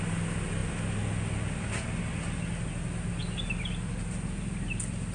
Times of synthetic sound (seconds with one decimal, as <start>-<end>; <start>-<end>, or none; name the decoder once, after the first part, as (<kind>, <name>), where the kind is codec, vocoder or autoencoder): none